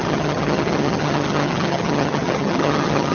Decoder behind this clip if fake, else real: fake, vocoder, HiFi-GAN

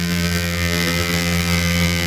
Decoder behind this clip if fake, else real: fake, vocoder, BigVGAN v2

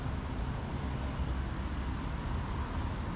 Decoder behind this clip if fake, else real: real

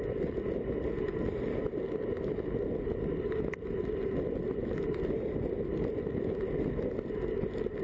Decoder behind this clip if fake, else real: real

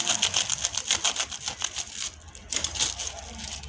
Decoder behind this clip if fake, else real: real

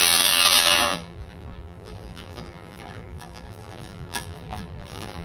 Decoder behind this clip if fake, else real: fake, vocoder, BigVGAN v2